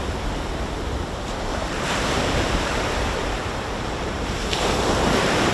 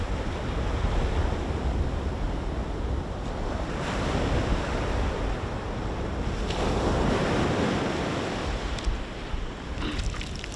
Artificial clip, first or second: first